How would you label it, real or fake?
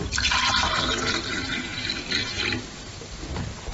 fake